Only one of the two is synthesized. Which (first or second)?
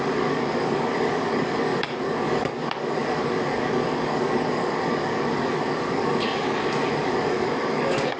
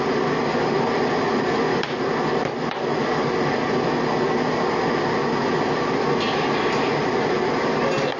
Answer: first